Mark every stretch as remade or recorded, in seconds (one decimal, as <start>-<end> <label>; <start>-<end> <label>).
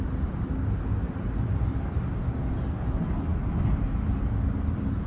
0.0-5.1 recorded